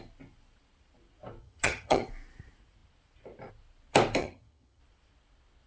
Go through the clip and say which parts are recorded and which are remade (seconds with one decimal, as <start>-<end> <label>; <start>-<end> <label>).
0.0-1.4 recorded; 1.4-2.1 remade; 2.1-4.2 recorded; 4.2-4.8 remade; 4.8-5.7 recorded

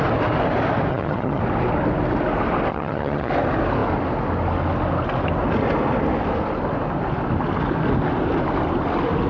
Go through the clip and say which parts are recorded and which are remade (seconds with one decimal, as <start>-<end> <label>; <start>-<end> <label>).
0.0-0.9 recorded; 0.9-1.4 remade; 1.4-2.7 recorded; 2.7-3.3 remade; 3.3-9.3 recorded